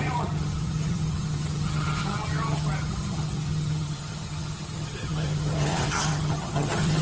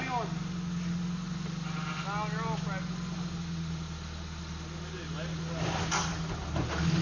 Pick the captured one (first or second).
second